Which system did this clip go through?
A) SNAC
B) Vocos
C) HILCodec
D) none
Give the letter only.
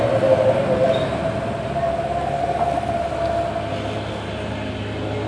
D